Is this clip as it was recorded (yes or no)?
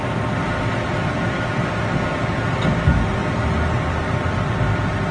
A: yes